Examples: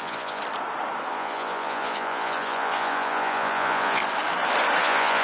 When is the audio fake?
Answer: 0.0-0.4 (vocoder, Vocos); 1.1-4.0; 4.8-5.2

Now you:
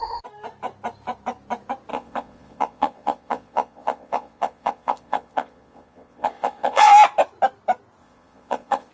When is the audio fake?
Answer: 1.9-6.9 (vocoder, Vocos); 8.0-8.9

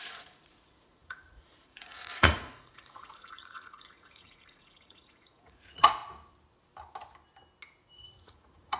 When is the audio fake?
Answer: 0.0-6.0 (vocoder, Vocos); 8.2-8.8